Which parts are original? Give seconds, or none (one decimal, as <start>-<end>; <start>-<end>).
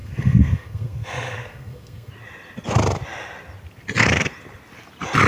2.1-5.3